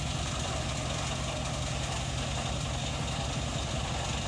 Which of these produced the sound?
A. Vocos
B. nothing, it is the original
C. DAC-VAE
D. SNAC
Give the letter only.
B